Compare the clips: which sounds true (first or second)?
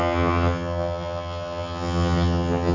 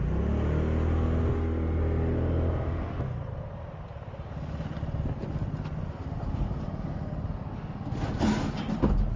second